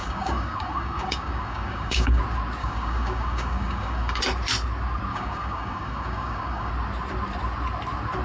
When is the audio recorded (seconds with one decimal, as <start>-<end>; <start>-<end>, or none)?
2.2-2.6; 4.2-5.1; 6.7-8.2